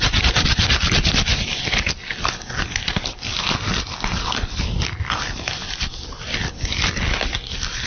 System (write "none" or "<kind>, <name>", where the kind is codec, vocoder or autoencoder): none